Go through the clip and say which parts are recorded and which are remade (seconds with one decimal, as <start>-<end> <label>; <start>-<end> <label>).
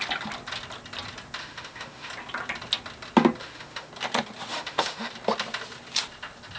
0.0-1.4 recorded; 1.4-2.1 remade; 2.1-3.4 recorded; 3.4-3.9 remade; 3.9-4.5 recorded; 4.5-5.1 remade; 5.1-6.6 recorded